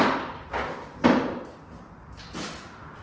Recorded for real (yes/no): yes